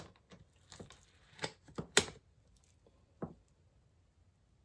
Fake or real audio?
real